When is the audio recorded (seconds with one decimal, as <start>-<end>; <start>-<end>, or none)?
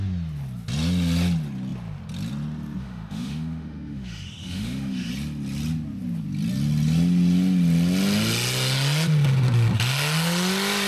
0.0-2.8; 5.1-10.9